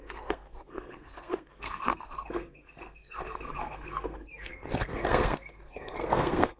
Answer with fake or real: fake